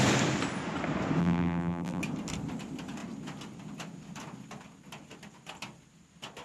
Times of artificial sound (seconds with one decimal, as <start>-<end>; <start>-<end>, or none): 1.2-2.0